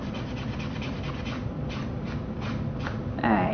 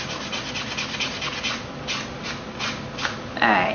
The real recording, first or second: second